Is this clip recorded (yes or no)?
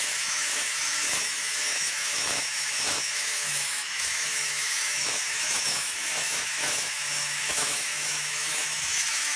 no